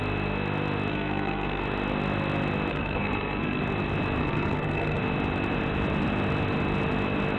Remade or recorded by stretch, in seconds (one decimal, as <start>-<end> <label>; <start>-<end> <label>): 0.0-0.9 recorded; 0.9-1.6 remade; 1.6-2.7 recorded; 2.7-3.6 remade; 3.6-4.2 recorded; 4.2-5.0 remade; 5.0-7.4 recorded